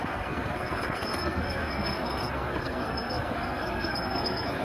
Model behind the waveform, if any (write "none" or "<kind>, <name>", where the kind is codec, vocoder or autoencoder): codec, SNAC